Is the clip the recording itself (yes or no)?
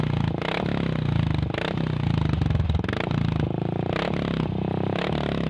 yes